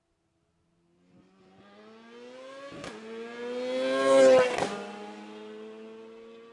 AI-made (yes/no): no